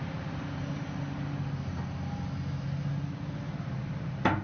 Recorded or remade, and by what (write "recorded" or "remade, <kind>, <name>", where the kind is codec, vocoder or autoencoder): recorded